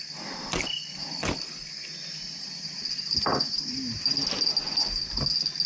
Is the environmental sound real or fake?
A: real